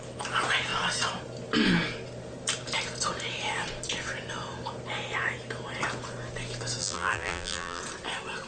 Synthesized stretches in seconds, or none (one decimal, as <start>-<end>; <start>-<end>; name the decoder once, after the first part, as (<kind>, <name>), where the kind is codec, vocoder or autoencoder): 6.8-7.8 (vocoder, BigVGAN v2)

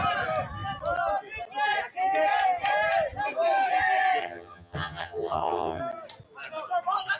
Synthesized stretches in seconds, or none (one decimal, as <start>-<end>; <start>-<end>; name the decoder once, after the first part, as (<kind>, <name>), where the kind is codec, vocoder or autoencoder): 4.2-5.8 (vocoder, HiFi-GAN)

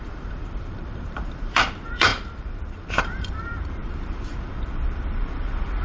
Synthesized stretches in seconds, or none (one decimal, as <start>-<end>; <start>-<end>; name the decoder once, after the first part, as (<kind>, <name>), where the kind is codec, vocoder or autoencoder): 0.0-5.8 (vocoder, BigVGAN v2)

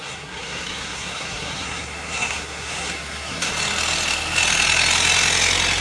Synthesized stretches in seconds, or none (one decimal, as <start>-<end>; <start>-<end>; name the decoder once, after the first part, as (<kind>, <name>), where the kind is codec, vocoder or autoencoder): 0.0-3.5 (codec, SNAC)

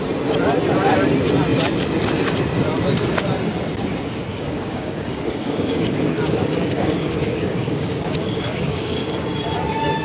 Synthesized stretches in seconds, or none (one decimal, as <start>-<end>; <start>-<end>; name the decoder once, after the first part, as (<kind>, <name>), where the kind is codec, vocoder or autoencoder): 4.3-9.2 (codec, DAC)

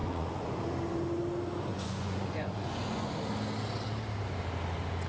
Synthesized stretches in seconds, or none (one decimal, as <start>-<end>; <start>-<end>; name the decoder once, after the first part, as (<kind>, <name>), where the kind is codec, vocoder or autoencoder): 0.0-0.6 (vocoder, Vocos); 1.7-3.1

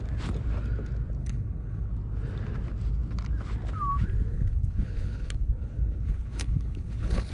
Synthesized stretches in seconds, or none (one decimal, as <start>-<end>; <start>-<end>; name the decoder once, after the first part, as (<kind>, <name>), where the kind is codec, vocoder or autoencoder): 1.2-1.9 (codec, HILCodec); 4.3-7.3

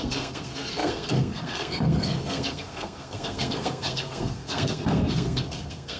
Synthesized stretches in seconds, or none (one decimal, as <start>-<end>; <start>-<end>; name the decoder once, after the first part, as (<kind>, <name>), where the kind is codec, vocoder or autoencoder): 0.0-6.0 (codec, SNAC)